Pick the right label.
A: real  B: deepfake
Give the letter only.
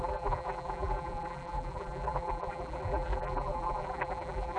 B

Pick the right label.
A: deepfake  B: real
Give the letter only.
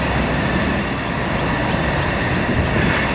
B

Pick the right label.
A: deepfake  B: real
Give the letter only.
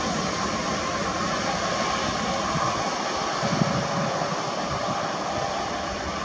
B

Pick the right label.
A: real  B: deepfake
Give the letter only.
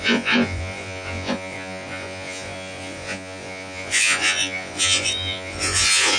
B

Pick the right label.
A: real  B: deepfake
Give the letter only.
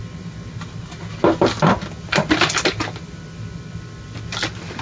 A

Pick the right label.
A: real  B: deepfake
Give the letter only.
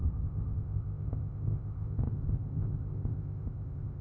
B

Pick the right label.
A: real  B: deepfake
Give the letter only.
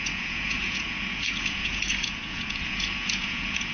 B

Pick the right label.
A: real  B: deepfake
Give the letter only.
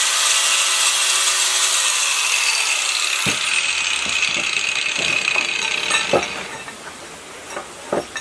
A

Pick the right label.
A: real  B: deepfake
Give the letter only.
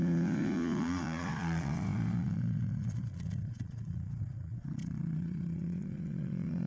B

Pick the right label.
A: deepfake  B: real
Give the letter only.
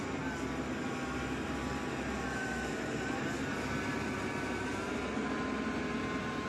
B